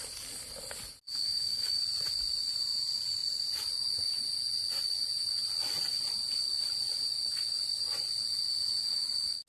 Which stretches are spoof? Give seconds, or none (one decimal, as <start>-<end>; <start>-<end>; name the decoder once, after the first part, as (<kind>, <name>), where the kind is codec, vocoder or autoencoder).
1.1-1.8 (codec, DAC)